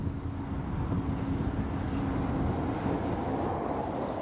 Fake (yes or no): no